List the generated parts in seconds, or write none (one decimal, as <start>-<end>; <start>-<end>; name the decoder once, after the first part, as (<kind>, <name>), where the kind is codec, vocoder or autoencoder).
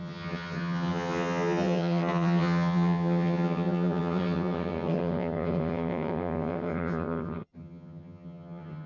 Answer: 0.0-8.9 (vocoder, HiFi-GAN)